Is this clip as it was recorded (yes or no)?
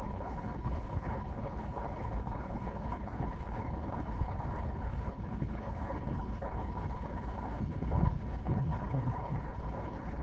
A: no